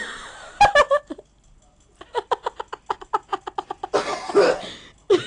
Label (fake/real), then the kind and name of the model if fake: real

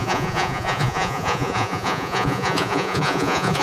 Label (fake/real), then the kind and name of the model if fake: fake, vocoder, Vocos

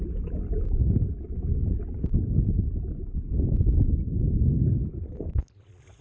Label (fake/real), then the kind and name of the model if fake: real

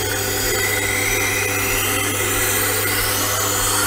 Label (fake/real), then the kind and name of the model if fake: real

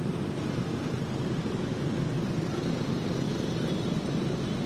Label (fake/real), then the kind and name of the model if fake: real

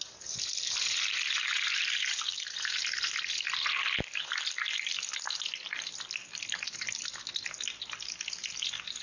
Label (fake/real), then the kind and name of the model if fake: real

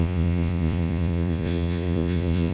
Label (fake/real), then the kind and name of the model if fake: fake, vocoder, Vocos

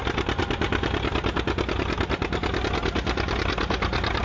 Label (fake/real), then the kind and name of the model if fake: real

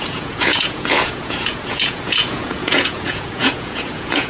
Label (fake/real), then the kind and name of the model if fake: fake, vocoder, Vocos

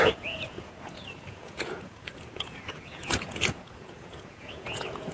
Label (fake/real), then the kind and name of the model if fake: fake, vocoder, Vocos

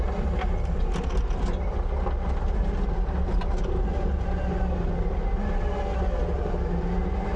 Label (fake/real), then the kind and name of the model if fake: real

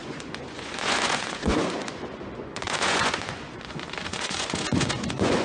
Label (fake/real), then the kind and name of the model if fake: fake, vocoder, Vocos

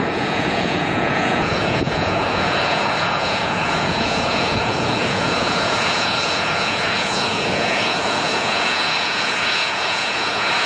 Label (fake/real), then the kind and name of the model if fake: fake, vocoder, Vocos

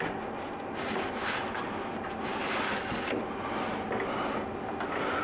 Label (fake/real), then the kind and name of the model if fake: real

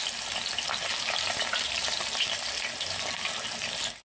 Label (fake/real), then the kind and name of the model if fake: real